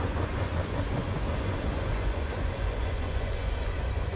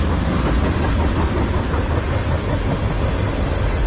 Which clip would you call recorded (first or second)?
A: second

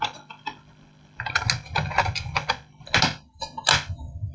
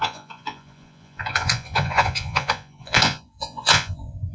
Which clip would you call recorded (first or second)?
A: first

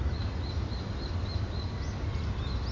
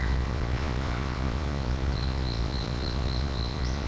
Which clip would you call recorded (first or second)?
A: first